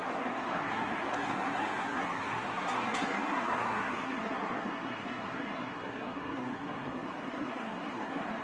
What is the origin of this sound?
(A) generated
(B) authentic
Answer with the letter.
A